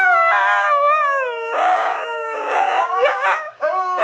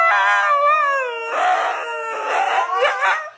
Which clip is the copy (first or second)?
first